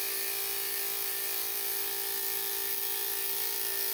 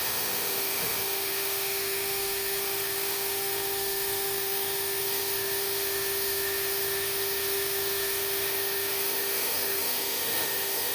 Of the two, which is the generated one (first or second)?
second